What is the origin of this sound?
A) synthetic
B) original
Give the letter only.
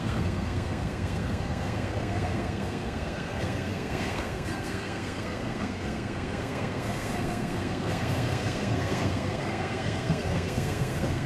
A